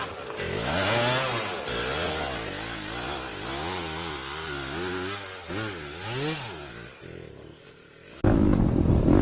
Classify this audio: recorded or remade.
recorded